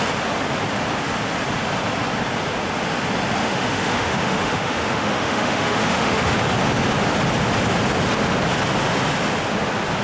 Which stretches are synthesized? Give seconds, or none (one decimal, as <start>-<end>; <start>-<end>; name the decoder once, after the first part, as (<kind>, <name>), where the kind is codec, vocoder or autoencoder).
3.4-6.3 (autoencoder, DAC-VAE)

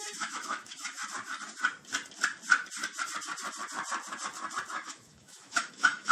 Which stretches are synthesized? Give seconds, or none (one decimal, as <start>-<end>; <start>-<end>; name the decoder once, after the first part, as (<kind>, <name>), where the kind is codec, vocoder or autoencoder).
0.0-1.0 (autoencoder, DAC-VAE); 4.7-6.1

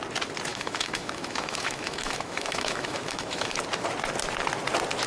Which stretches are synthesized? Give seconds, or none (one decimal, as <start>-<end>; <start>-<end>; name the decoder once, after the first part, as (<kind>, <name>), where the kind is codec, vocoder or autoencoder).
0.5-3.6 (autoencoder, DAC-VAE)

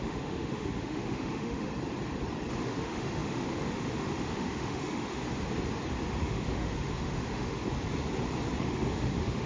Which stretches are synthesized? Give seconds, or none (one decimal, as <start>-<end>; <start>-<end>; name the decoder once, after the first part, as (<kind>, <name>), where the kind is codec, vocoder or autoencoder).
0.0-1.7 (autoencoder, DAC-VAE); 2.6-5.2; 6.2-7.6; 8.6-9.5